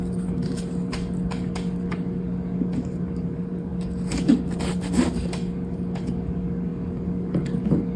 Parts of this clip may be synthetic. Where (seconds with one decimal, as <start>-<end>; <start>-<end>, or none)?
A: 0.0-8.0